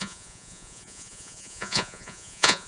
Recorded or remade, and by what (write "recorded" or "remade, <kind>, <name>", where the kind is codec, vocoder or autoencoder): remade, vocoder, Vocos